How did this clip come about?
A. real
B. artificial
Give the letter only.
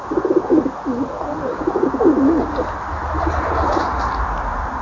A